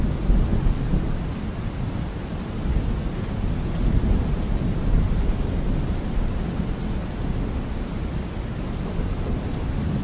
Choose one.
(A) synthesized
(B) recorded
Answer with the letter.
B